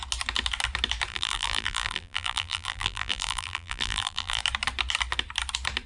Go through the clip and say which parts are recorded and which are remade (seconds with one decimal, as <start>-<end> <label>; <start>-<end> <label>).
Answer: 0.0-1.1 recorded; 1.1-4.4 remade; 4.4-5.9 recorded